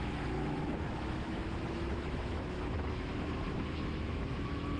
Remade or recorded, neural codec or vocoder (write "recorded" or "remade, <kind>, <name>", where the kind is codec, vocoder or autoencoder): remade, autoencoder, DAC-VAE